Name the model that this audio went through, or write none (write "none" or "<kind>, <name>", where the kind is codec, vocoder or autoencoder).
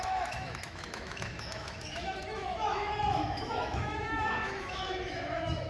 autoencoder, DAC-VAE